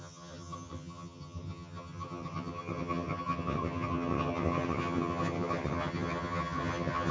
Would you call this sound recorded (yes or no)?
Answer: no